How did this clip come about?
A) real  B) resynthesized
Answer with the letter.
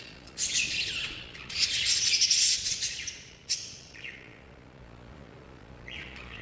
B